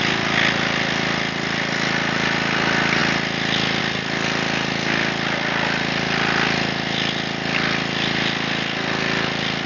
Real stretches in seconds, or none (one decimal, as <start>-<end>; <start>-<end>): 0.0-9.7